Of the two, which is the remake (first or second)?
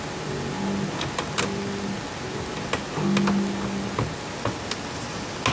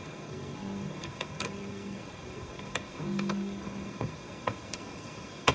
second